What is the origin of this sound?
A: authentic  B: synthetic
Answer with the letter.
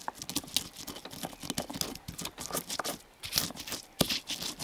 A